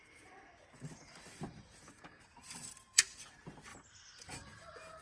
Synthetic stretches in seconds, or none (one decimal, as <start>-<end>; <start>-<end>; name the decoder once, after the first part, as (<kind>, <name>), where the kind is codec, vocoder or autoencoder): 0.0-3.0 (vocoder, BigVGAN v2); 3.7-5.0